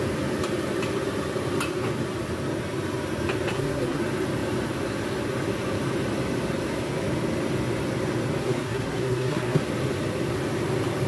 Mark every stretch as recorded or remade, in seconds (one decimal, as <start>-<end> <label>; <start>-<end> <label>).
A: 0.0-3.5 recorded; 3.5-4.0 remade; 4.0-8.4 recorded; 8.4-9.6 remade; 9.6-11.1 recorded